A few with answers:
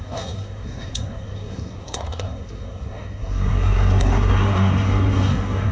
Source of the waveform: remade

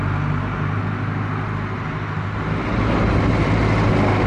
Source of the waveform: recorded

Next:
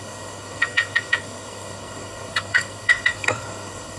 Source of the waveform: remade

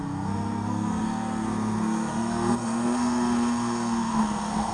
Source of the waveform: remade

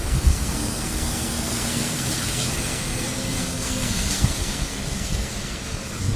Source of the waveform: remade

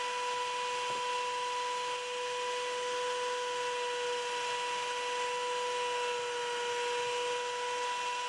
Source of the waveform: recorded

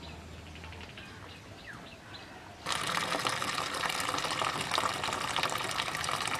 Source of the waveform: recorded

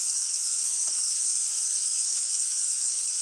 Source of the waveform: remade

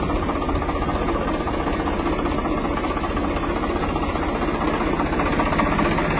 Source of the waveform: recorded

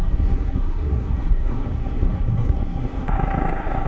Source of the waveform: remade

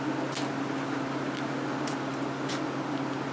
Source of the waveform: recorded